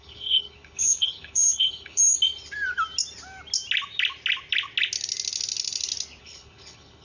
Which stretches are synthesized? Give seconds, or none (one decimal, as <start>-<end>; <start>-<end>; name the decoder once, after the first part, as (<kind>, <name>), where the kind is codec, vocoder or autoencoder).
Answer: 0.0-2.0 (codec, HILCodec); 6.2-7.0